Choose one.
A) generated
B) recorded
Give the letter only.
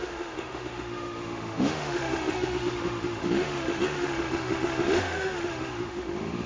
A